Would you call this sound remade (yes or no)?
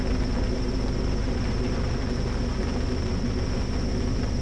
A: no